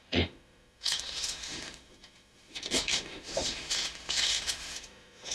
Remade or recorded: remade